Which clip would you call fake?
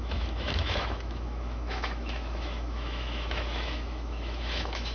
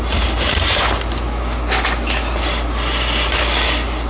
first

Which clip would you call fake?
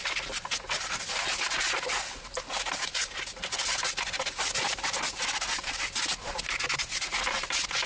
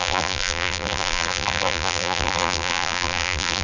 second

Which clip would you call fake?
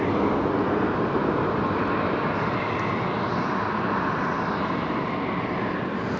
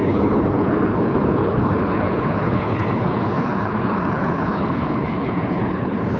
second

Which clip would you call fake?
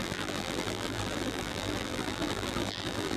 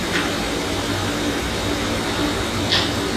first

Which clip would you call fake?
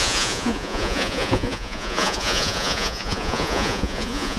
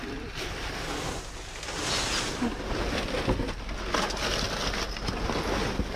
first